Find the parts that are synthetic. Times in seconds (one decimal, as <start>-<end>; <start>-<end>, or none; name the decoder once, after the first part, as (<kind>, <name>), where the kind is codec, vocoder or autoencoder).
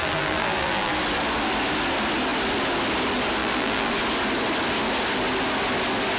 0.0-0.9 (vocoder, BigVGAN v2); 3.4-3.9